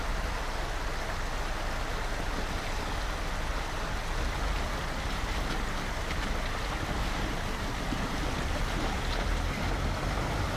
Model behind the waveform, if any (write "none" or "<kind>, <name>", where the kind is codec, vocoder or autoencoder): none